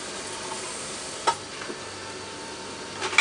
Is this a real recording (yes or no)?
yes